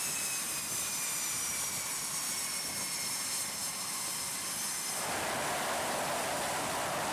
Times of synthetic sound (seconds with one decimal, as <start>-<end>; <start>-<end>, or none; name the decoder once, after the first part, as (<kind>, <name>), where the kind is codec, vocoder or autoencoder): none